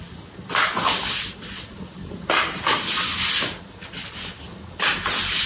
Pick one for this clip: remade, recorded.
recorded